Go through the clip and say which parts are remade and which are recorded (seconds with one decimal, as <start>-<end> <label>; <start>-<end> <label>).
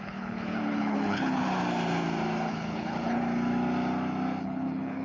0.0-1.4 remade; 1.4-2.5 recorded; 2.5-3.2 remade; 3.2-4.4 recorded; 4.4-5.0 remade